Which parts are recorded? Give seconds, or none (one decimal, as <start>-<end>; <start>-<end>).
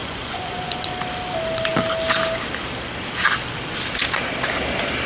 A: 0.9-5.1